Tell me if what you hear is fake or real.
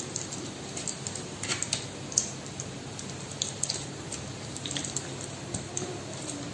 fake